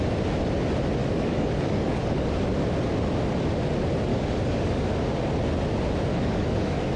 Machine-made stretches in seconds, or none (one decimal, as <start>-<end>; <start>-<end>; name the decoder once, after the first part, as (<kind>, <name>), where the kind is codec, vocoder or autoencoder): 1.0-2.3 (codec, DAC); 4.1-5.1; 6.1-7.0